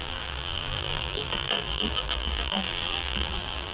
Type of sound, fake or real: fake